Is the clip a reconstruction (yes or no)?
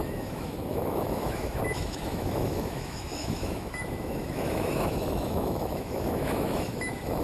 yes